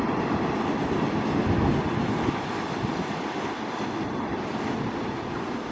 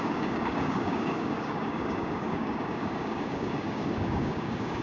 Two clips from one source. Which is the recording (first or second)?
first